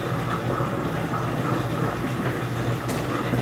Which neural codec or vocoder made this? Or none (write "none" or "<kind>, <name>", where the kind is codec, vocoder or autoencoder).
none